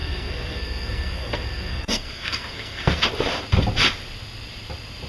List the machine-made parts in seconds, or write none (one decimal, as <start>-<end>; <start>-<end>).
0.0-3.1